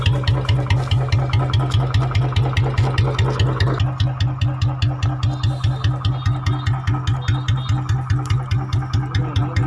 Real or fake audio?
real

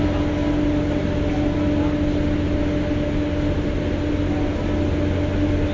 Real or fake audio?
real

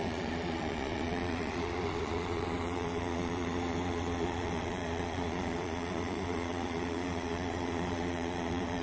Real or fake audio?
fake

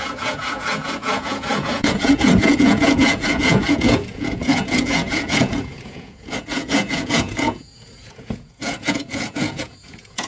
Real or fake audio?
fake